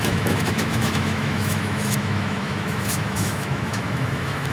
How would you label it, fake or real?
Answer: fake